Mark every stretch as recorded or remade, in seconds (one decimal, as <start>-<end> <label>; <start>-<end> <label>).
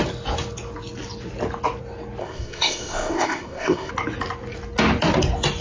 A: 0.0-2.2 recorded; 2.2-3.9 remade; 3.9-5.6 recorded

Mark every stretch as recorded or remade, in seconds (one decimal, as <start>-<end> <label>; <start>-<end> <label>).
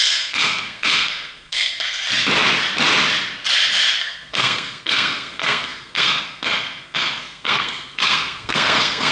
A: 0.0-2.0 remade; 2.0-4.0 recorded; 4.0-9.1 remade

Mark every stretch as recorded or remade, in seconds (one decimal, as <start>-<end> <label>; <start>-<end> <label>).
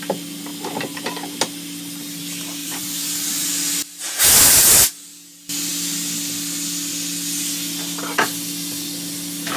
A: 0.0-2.6 recorded; 2.6-3.5 remade; 3.5-9.6 recorded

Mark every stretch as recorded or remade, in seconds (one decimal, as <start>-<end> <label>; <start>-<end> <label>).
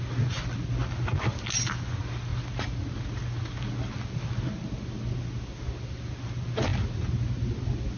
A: 0.0-8.0 recorded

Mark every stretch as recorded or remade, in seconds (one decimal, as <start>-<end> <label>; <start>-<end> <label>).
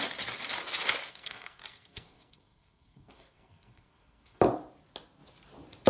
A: 0.0-1.1 recorded; 1.1-4.4 remade; 4.4-5.9 recorded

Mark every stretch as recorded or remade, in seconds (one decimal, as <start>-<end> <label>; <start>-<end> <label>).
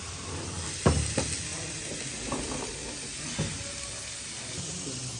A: 0.0-5.2 recorded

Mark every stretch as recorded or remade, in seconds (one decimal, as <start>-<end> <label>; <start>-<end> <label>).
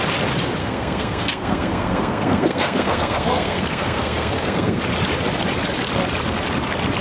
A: 0.0-0.6 recorded; 0.6-4.8 remade; 4.8-7.0 recorded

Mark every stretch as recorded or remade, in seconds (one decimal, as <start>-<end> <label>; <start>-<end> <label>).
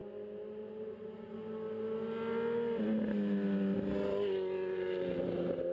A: 0.0-5.7 recorded